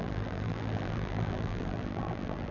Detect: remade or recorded remade